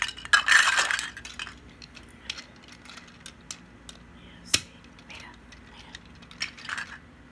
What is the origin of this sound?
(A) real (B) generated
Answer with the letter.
A